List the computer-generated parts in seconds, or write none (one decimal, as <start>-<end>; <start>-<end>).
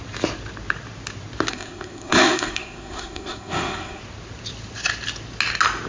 1.5-4.0